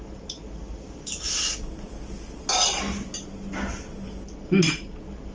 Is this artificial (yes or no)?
no